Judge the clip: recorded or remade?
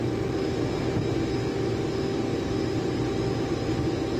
recorded